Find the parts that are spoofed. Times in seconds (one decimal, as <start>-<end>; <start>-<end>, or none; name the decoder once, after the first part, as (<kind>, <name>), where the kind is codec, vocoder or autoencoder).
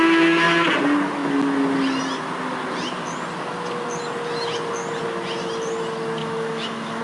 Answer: 6.2-7.0 (autoencoder, DAC-VAE)